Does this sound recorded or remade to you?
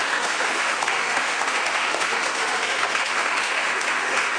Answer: remade